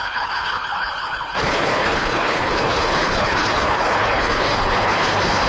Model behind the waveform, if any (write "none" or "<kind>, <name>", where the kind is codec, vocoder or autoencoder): codec, HILCodec